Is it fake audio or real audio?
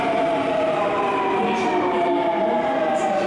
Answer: real